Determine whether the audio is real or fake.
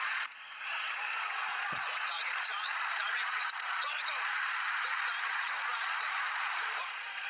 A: fake